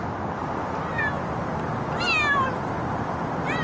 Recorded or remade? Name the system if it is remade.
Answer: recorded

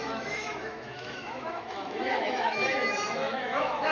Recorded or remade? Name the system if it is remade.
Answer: remade, autoencoder, DAC-VAE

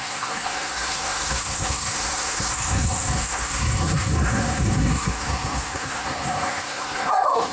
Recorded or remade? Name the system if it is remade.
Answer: remade, codec, SNAC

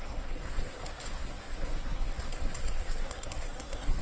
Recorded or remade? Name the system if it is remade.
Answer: remade, codec, SNAC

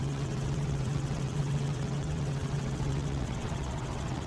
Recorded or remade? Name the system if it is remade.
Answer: remade, vocoder, WaveNeXt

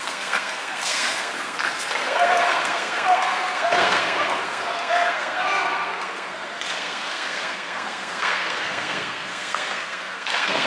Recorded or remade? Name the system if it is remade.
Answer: remade, codec, SNAC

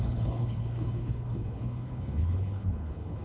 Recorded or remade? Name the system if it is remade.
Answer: remade, codec, HILCodec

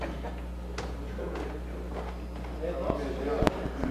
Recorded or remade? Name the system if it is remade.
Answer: recorded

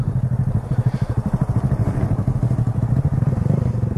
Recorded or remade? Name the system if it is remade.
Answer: recorded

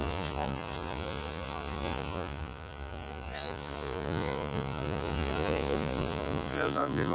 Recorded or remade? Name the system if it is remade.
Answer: remade, vocoder, Vocos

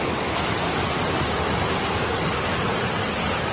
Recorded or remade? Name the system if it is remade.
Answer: recorded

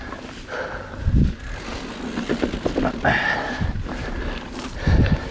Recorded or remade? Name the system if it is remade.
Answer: recorded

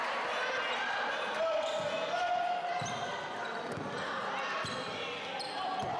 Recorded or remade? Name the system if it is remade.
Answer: recorded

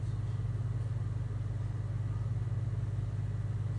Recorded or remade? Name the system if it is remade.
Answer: recorded